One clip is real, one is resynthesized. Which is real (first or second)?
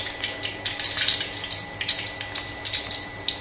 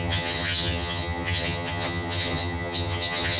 first